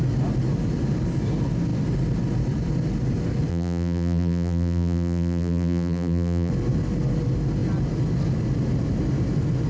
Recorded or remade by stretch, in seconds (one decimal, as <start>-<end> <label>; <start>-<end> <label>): 0.0-3.5 recorded; 3.5-6.5 remade; 6.5-9.7 recorded